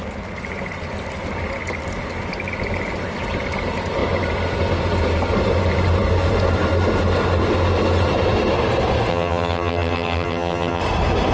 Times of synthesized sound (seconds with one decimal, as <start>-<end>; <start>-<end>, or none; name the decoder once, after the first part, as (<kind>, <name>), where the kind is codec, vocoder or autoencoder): 9.1-10.8 (vocoder, HiFi-GAN)